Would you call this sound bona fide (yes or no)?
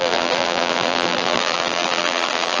no